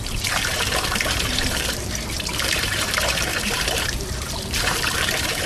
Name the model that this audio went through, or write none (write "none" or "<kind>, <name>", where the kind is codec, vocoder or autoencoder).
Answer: vocoder, BigVGAN v2